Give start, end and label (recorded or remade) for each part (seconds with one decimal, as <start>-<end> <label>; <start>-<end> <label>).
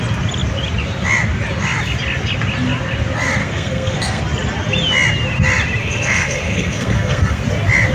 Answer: 0.0-3.4 recorded; 3.4-4.2 remade; 4.2-5.8 recorded; 5.8-7.4 remade; 7.4-7.9 recorded